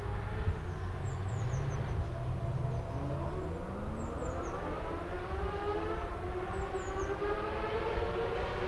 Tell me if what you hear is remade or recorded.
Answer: recorded